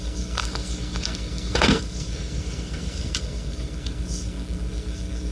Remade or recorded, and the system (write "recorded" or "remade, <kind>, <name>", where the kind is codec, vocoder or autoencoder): remade, codec, SNAC